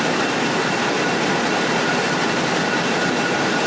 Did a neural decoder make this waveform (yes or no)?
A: no